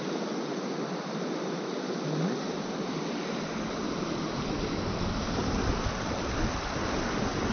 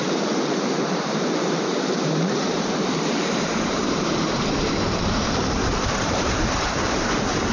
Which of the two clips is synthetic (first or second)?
second